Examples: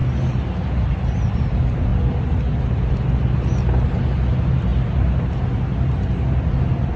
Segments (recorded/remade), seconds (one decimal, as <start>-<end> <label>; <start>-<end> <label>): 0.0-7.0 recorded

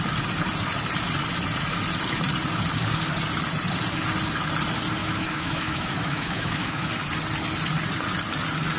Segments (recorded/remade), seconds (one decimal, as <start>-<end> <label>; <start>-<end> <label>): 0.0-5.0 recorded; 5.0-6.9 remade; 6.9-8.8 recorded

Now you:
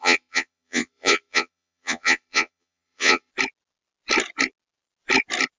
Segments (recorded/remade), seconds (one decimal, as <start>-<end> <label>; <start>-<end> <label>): 0.0-3.3 remade; 3.3-5.6 recorded

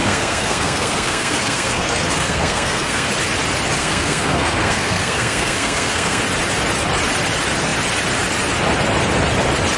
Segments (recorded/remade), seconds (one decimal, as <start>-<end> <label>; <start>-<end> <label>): 0.0-3.1 remade; 3.1-3.8 recorded; 3.8-6.2 remade; 6.2-9.8 recorded

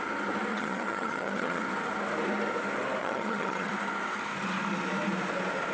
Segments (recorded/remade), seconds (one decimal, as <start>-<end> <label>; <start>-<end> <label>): 0.0-0.5 recorded; 0.5-1.6 remade; 1.6-3.0 recorded; 3.0-3.7 remade; 3.7-5.7 recorded

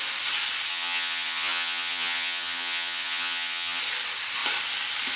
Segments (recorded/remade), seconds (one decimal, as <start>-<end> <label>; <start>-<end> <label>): 0.0-0.7 recorded; 0.7-3.8 remade; 3.8-5.2 recorded

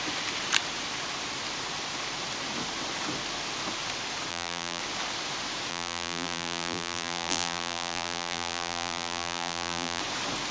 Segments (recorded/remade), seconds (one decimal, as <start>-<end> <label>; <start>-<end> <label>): 0.0-4.3 recorded; 4.3-4.8 remade; 4.8-5.7 recorded; 5.7-10.0 remade; 10.0-10.5 recorded